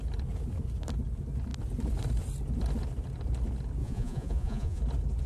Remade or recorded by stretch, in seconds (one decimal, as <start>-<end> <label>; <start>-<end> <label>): 0.0-3.8 recorded; 3.8-4.8 remade; 4.8-5.3 recorded